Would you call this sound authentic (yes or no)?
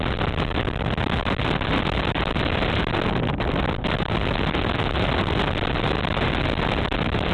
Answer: yes